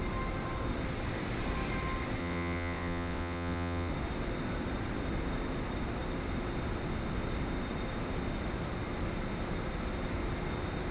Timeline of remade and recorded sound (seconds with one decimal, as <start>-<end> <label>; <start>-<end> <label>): 0.0-2.2 recorded; 2.2-3.9 remade; 3.9-10.9 recorded